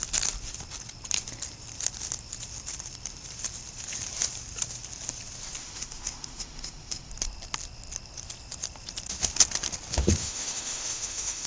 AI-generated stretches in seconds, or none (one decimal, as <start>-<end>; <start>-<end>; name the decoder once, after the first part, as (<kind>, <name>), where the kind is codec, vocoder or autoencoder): 5.6-7.1 (autoencoder, DAC-VAE); 10.2-11.5

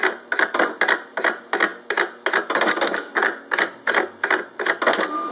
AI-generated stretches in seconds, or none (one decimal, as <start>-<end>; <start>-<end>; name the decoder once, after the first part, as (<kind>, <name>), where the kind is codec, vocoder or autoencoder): none

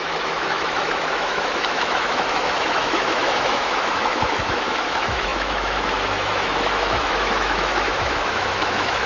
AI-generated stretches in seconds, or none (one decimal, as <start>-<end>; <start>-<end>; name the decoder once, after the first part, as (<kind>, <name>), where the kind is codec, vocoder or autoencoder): 0.0-9.1 (autoencoder, DAC-VAE)

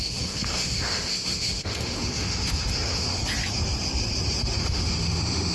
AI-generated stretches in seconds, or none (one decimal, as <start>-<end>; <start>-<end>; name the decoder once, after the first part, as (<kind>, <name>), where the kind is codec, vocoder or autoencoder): 0.0-3.2 (autoencoder, DAC-VAE); 4.6-5.5

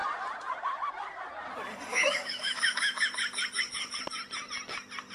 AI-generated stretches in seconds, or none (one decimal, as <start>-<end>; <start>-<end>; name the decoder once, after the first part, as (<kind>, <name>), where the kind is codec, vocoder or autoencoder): 1.9-3.0 (autoencoder, DAC-VAE)

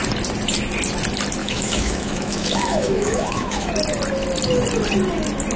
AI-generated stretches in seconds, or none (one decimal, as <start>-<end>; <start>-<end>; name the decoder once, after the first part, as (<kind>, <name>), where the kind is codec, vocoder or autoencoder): 1.4-3.7 (autoencoder, DAC-VAE)